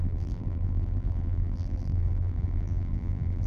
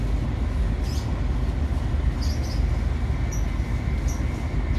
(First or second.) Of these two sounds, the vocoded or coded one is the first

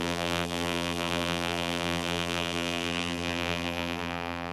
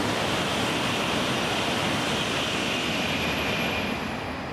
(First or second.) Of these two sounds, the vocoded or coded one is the first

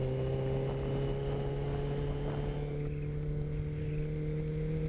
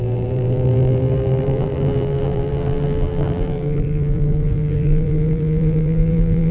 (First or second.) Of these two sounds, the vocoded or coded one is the second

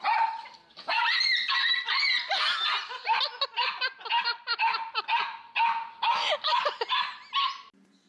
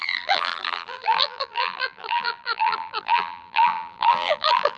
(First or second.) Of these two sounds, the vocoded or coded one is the second